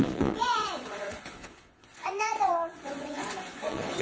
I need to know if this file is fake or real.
fake